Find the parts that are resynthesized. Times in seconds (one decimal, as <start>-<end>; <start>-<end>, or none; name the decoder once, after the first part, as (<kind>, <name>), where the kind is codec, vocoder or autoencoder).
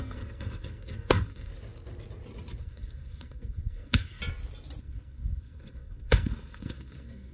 0.0-1.5 (codec, SNAC); 2.6-4.2; 4.8-7.3